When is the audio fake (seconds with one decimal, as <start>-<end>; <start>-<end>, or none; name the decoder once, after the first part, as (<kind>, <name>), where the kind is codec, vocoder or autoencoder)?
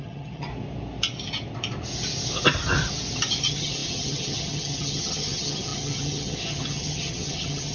0.0-0.5 (vocoder, HiFi-GAN); 3.4-7.7